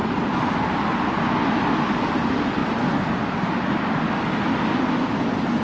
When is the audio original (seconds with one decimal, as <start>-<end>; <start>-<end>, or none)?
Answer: 0.0-2.6; 4.0-5.6